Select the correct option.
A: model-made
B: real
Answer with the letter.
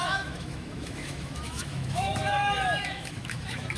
A